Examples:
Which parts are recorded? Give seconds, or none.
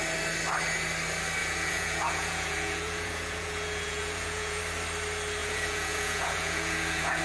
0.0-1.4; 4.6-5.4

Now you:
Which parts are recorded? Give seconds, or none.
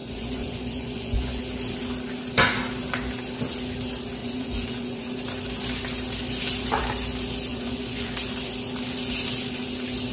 1.4-4.2; 5.1-7.5; 8.1-10.1